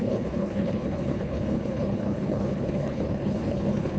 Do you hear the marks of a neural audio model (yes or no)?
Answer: yes